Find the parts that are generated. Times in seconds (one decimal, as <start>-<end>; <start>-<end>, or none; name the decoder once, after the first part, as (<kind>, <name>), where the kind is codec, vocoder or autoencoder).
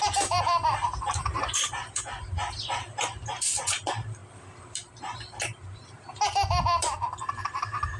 0.0-8.0 (vocoder, BigVGAN v2)